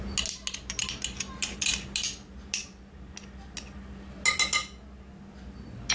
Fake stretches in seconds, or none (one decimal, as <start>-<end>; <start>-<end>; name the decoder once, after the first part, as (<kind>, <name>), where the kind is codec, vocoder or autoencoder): none